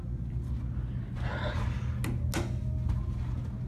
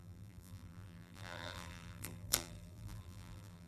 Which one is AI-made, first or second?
second